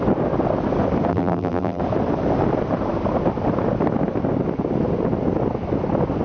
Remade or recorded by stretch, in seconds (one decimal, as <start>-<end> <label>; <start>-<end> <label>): 0.0-1.1 recorded; 1.1-1.8 remade; 1.8-6.2 recorded